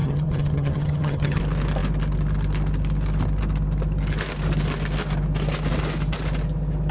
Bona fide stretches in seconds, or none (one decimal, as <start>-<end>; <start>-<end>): 1.4-6.9